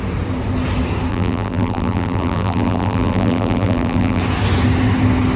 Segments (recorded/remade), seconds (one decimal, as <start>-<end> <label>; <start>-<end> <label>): 0.0-1.1 recorded; 1.1-4.2 remade; 4.2-5.4 recorded